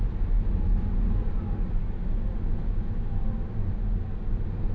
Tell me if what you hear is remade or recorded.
recorded